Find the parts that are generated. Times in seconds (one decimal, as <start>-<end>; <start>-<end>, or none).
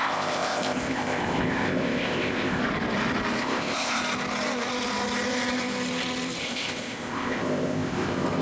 0.0-2.6; 3.4-4.0; 6.4-8.4